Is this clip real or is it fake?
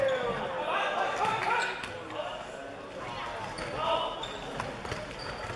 real